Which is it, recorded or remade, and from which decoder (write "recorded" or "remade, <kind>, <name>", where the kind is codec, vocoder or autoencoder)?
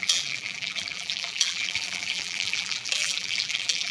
remade, vocoder, BigVGAN v2